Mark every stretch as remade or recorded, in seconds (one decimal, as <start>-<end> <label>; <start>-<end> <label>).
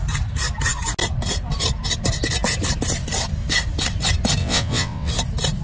0.0-4.4 recorded; 4.4-5.1 remade; 5.1-5.6 recorded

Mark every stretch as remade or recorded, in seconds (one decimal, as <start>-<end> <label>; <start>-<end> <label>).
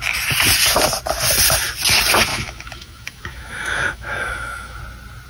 0.0-2.3 recorded; 2.3-4.8 remade; 4.8-5.3 recorded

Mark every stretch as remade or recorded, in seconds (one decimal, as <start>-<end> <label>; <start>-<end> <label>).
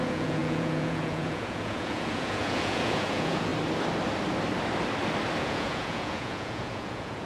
0.0-3.5 remade; 3.5-5.4 recorded; 5.4-7.3 remade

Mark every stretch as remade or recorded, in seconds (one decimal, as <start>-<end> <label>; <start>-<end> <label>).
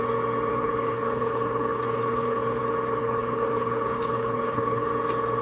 0.0-0.5 recorded; 0.5-2.6 remade; 2.6-3.0 recorded; 3.0-4.9 remade; 4.9-5.4 recorded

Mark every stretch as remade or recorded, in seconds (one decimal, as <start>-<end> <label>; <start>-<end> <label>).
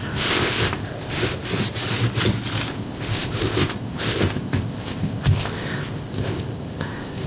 0.0-1.4 remade; 1.4-2.7 recorded; 2.7-7.3 remade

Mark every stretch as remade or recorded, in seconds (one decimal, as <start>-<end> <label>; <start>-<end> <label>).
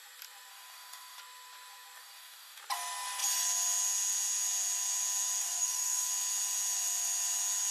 0.0-0.5 recorded; 0.5-1.2 remade; 1.2-2.0 recorded; 2.0-2.6 remade; 2.6-5.4 recorded; 5.4-6.1 remade; 6.1-7.7 recorded